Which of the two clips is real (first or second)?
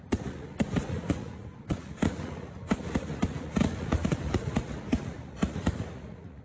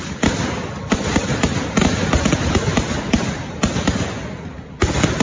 second